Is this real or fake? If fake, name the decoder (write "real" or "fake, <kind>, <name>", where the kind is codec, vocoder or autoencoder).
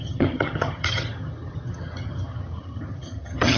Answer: fake, vocoder, HiFi-GAN